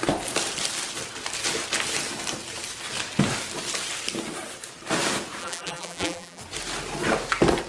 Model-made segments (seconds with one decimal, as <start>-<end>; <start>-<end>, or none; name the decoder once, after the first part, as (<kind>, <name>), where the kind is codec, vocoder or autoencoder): 5.4-6.4 (vocoder, BigVGAN v2)

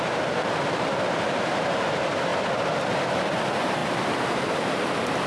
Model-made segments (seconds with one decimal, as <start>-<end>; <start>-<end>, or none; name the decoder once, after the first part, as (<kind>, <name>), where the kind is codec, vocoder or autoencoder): 0.0-2.3 (vocoder, BigVGAN v2); 3.1-5.3

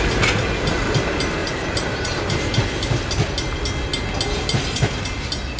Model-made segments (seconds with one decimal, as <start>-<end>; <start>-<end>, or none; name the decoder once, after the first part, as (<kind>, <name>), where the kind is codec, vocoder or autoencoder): 1.4-2.5 (vocoder, BigVGAN v2)

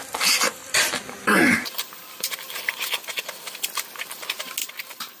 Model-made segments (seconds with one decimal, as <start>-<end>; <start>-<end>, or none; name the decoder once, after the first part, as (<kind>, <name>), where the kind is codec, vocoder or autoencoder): 0.6-2.7 (vocoder, BigVGAN v2); 4.6-5.2

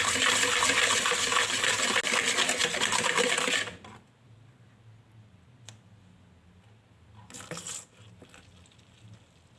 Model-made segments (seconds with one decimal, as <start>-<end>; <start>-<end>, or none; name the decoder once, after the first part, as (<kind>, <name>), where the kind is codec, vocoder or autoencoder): 2.6-3.3 (vocoder, BigVGAN v2)

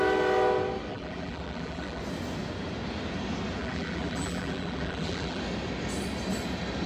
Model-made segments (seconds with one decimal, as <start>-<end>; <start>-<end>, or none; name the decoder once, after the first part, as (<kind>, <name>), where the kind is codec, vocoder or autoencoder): 0.9-2.0 (vocoder, BigVGAN v2); 3.6-5.4

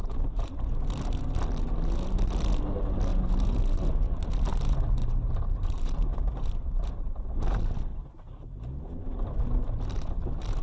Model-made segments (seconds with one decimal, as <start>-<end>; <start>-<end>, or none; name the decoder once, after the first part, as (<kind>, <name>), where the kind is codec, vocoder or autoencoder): 0.0-0.9 (vocoder, BigVGAN v2); 5.0-6.9

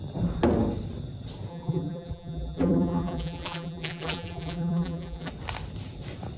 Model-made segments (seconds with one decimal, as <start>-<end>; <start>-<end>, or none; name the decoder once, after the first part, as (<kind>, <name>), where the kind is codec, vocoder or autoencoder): 1.5-5.3 (vocoder, BigVGAN v2)